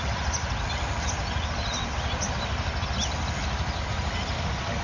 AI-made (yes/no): no